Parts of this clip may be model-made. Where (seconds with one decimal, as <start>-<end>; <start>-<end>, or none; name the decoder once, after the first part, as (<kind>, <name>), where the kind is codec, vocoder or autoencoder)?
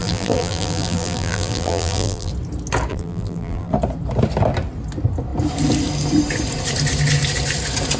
0.0-2.3 (vocoder, BigVGAN v2); 2.9-3.7